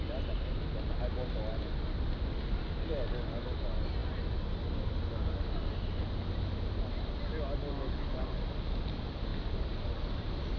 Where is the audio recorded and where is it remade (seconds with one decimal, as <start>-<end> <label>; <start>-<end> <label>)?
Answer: 0.0-10.6 recorded